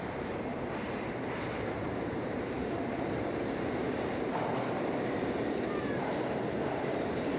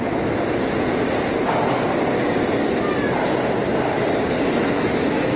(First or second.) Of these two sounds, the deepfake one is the first